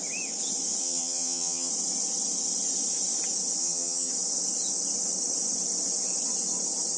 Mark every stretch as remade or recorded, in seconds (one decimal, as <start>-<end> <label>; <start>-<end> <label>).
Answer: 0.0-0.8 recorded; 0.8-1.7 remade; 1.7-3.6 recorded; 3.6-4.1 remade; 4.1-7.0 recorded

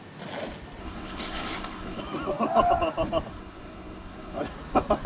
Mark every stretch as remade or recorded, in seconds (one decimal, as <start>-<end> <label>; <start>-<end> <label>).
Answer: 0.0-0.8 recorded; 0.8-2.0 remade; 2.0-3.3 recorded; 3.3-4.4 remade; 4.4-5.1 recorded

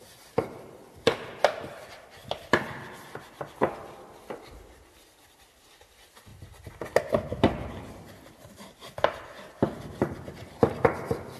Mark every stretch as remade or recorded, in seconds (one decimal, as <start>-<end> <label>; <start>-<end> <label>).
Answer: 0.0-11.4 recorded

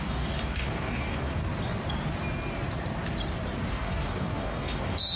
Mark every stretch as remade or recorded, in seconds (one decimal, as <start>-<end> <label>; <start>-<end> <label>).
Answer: 0.0-1.4 remade; 1.4-3.7 recorded; 3.7-5.2 remade

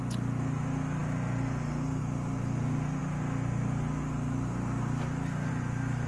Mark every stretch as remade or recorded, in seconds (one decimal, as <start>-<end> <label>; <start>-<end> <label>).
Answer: 0.0-1.0 recorded; 1.0-2.0 remade; 2.0-6.1 recorded